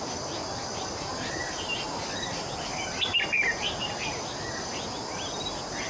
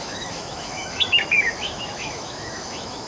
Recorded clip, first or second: first